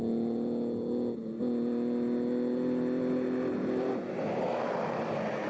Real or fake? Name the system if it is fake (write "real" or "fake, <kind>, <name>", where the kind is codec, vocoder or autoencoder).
real